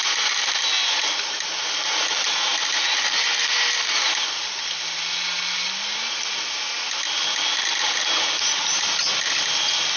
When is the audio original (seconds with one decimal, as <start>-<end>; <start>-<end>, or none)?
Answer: 0.0-10.0